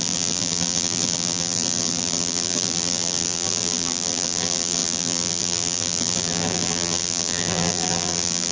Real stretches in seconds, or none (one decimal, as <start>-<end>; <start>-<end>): none